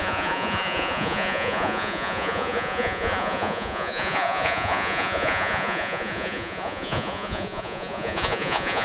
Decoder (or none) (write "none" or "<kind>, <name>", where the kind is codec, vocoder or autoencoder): vocoder, Vocos